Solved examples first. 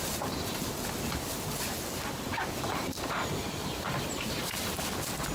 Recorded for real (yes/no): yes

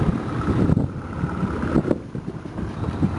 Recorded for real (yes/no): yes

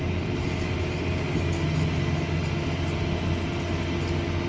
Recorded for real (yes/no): yes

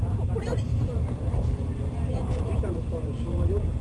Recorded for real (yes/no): no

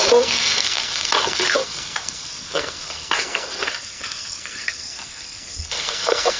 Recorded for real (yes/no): no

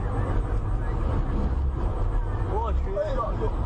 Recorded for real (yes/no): yes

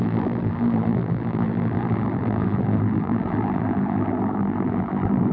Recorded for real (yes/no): no